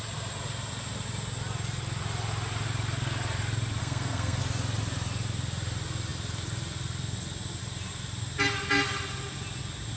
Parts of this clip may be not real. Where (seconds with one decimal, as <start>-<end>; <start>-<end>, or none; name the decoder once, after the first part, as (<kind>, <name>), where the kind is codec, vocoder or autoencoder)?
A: 3.8-4.4 (codec, SNAC)